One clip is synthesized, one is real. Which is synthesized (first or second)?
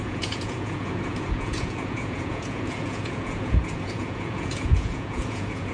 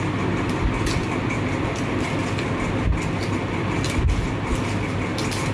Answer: first